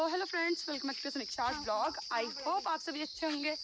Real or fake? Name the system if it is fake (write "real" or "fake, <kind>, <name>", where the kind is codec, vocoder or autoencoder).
real